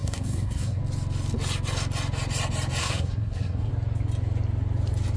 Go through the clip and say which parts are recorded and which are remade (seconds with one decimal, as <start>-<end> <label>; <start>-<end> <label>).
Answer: 0.0-0.8 remade; 0.8-2.8 recorded; 2.8-3.7 remade; 3.7-5.2 recorded